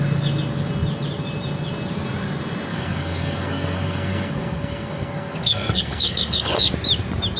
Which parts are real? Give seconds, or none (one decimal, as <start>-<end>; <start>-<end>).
0.0-2.7; 6.7-7.4